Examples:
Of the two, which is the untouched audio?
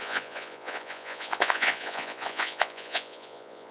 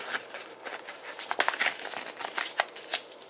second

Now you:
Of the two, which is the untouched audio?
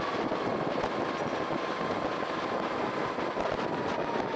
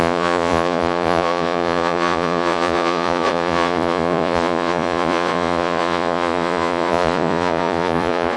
first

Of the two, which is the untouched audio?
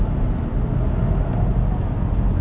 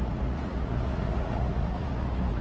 first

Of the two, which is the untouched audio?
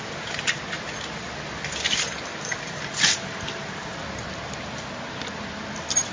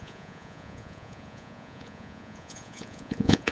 first